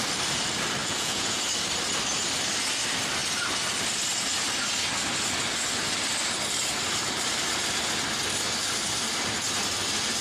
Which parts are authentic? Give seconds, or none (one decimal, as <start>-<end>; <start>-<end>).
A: 0.0-0.8; 1.4-10.2